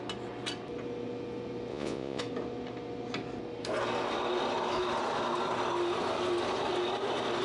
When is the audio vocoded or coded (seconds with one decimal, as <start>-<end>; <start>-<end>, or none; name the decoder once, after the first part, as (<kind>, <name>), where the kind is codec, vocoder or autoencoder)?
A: 1.7-2.2 (vocoder, Vocos)